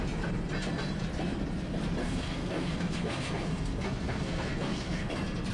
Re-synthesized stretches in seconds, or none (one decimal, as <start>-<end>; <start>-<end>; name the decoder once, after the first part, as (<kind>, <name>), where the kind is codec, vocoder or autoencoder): 2.0-5.1 (codec, SNAC)